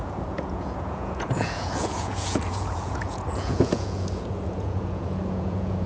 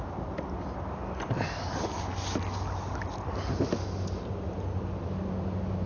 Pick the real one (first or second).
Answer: second